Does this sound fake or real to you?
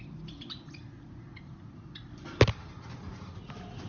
real